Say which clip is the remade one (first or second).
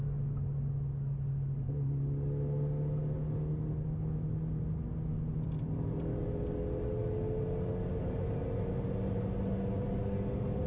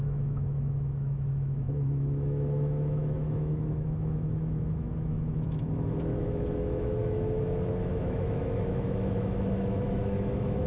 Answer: second